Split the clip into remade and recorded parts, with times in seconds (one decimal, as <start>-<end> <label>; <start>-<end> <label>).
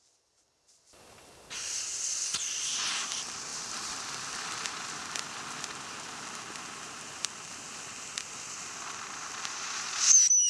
0.0-10.5 recorded